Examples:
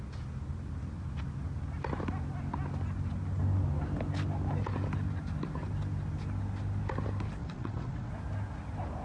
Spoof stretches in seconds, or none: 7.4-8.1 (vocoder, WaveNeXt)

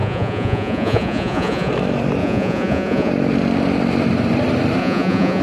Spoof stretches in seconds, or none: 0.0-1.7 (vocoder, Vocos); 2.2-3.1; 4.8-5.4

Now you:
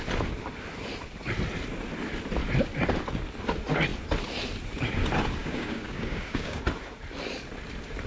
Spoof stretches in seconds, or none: 5.4-6.6 (codec, DAC)

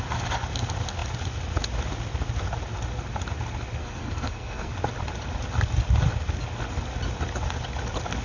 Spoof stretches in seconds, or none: 3.8-4.7 (codec, SNAC)

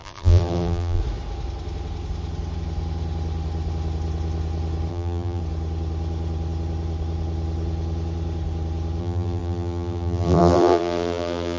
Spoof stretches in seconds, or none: 0.0-1.0 (vocoder, BigVGAN v2); 4.9-5.4; 9.0-11.6